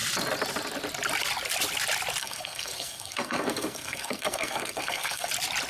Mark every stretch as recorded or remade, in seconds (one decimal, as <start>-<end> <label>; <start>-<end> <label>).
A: 0.0-2.2 recorded; 2.2-5.3 remade; 5.3-5.7 recorded